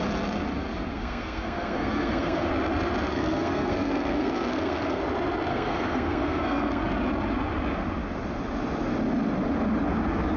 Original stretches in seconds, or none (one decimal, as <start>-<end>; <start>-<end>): 0.0-0.9; 2.5-3.1; 5.0-5.5; 6.8-10.4